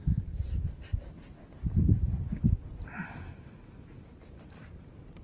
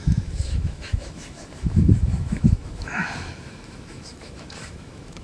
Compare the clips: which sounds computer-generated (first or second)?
second